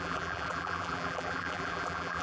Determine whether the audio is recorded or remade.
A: remade